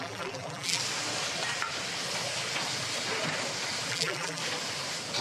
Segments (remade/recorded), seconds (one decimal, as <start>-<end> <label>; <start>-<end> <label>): 0.0-0.8 remade; 0.8-3.9 recorded; 3.9-4.4 remade; 4.4-5.2 recorded